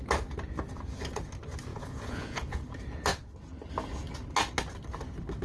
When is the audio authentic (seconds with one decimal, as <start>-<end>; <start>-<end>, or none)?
0.0-1.7; 2.6-5.4